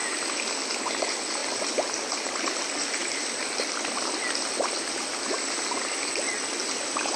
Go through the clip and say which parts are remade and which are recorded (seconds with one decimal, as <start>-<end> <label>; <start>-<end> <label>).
0.0-7.2 recorded